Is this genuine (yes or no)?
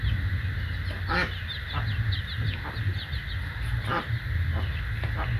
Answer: yes